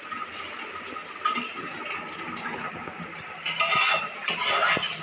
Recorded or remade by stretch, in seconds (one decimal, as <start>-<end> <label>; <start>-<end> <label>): 0.0-5.0 recorded